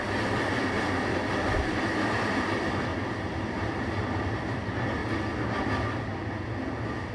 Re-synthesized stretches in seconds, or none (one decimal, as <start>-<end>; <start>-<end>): 0.0-2.9; 3.7-5.0